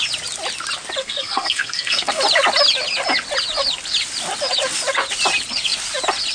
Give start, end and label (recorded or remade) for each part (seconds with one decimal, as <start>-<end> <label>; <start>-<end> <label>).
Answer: 0.0-1.0 recorded; 1.0-2.2 remade; 2.2-6.3 recorded